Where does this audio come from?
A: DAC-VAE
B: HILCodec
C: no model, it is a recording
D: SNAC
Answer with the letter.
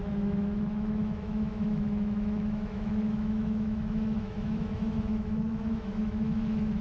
A